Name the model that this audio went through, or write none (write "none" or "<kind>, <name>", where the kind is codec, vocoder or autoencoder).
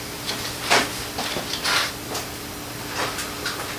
none